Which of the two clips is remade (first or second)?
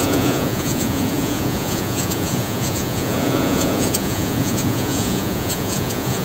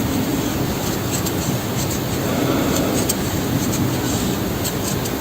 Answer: first